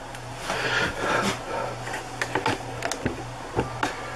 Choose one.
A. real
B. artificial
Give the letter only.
A